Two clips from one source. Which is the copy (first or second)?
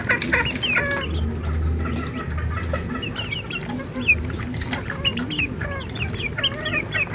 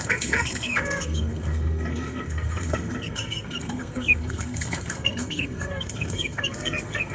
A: second